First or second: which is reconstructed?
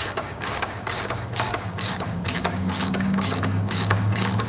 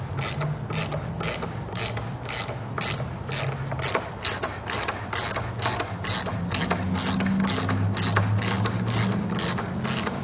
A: first